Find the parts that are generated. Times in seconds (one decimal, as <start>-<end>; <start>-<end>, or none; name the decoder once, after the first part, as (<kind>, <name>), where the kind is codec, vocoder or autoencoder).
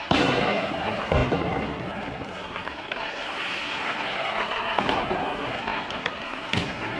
0.0-7.0 (codec, SNAC)